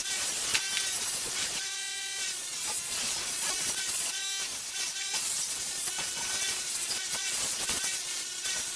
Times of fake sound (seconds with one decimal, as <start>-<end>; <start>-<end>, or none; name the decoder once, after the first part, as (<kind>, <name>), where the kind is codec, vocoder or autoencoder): 0.0-0.5 (vocoder, Vocos); 1.2-4.2; 4.7-8.8